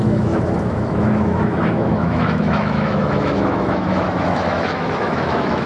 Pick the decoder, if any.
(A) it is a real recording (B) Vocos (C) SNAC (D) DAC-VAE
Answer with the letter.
D